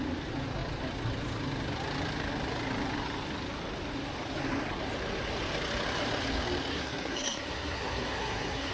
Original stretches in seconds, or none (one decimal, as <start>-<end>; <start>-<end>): 0.0-6.7

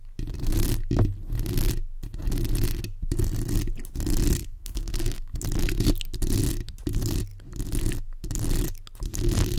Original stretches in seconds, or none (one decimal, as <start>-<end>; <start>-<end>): 0.0-4.4; 5.4-9.6